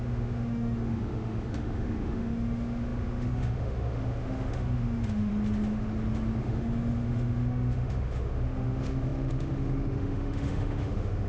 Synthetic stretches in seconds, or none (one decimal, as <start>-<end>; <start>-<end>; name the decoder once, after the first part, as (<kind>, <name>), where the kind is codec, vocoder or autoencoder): 0.0-5.3 (autoencoder, DAC-VAE); 6.4-11.3